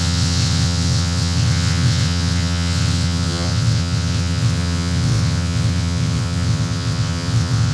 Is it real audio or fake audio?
fake